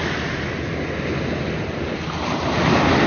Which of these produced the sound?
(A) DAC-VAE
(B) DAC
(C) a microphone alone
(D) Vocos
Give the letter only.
C